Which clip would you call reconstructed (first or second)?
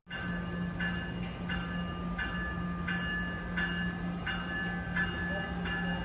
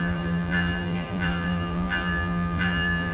second